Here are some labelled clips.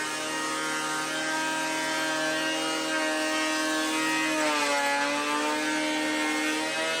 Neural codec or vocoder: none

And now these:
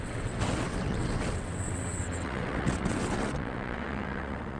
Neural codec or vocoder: vocoder, WaveNeXt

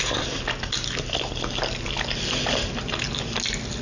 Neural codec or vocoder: none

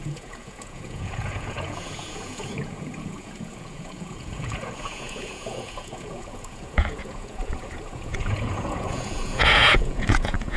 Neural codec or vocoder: vocoder, Vocos